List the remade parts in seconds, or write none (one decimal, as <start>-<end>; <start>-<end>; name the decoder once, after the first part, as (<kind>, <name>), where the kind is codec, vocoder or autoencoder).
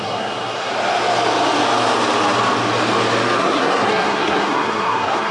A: 0.0-0.7 (codec, SNAC); 3.4-5.3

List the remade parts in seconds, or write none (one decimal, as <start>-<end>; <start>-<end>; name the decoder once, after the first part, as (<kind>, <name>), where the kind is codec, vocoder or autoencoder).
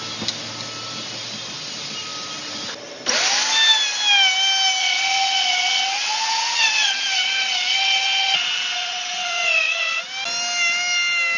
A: 4.8-10.0 (vocoder, WaveNeXt)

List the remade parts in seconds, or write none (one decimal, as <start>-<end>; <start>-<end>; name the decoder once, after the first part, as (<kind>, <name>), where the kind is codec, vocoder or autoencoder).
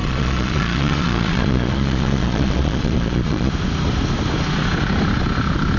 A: 0.0-3.5 (vocoder, Vocos)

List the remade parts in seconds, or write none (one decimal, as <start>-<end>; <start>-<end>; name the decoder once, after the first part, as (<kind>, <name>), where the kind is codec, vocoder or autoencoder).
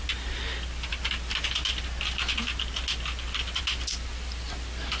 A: none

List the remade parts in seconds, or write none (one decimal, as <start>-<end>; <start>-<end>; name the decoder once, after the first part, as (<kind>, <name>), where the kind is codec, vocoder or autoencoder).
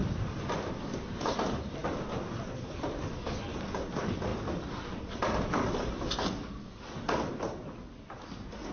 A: none